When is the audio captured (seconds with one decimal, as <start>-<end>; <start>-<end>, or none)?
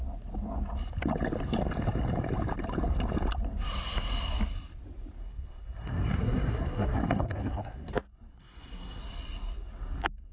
0.0-5.2; 7.9-8.3; 9.0-10.3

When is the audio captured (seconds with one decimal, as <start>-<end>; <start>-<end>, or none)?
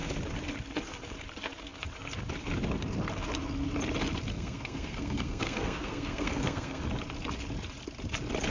0.0-4.3; 6.8-8.5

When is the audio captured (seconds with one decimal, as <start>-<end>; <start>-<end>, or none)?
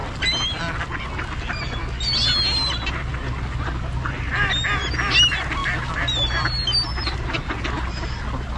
0.0-8.6